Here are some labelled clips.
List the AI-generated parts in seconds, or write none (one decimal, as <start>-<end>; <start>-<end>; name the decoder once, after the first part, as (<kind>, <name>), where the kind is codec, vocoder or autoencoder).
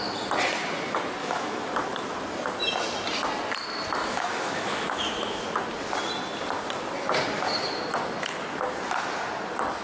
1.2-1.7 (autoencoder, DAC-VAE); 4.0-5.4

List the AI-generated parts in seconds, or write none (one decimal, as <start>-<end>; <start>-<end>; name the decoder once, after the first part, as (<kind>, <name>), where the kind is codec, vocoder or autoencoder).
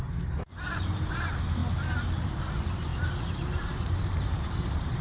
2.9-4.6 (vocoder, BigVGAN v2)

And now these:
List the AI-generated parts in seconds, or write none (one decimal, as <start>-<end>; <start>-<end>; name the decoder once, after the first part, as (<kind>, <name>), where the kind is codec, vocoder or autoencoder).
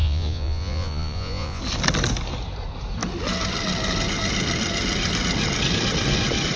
0.0-1.6 (vocoder, Vocos)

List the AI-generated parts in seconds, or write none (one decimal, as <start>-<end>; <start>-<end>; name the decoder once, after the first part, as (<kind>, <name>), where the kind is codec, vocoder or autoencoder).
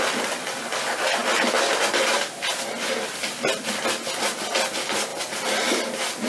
1.2-3.7 (vocoder, BigVGAN v2); 5.1-5.6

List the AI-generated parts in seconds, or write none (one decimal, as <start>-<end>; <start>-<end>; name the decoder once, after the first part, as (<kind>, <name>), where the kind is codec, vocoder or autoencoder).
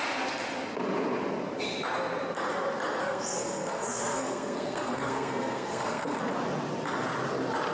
3.0-6.2 (codec, SNAC)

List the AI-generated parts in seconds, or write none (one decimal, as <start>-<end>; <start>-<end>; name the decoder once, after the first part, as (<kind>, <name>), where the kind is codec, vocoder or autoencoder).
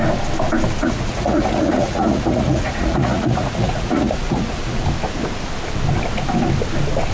0.8-4.8 (vocoder, Vocos)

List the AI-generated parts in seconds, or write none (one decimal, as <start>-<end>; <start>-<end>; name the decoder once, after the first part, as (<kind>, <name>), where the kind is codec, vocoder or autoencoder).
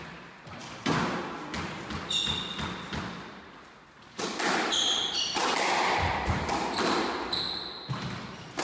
none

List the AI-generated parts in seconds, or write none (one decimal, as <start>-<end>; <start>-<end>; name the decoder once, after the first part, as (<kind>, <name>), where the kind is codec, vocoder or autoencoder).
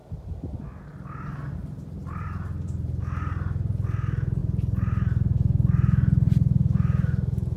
0.0-0.6 (vocoder, BigVGAN v2); 1.6-3.0